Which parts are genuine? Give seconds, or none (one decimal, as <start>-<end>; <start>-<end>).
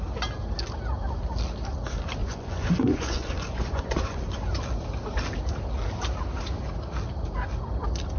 0.0-2.2; 4.2-8.2